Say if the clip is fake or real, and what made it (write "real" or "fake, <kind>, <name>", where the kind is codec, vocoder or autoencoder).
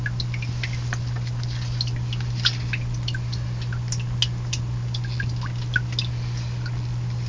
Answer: real